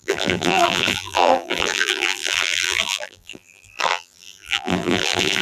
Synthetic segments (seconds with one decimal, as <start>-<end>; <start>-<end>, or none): 0.0-5.4